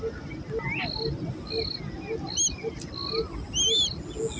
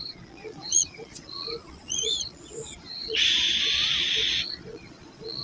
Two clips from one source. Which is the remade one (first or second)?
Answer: second